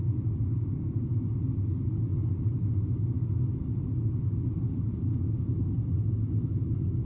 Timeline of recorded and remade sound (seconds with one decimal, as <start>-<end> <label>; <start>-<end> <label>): 0.0-7.0 recorded